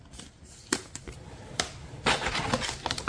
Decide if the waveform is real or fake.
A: real